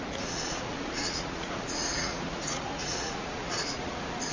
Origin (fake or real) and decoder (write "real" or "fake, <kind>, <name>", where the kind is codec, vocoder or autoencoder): fake, vocoder, Vocos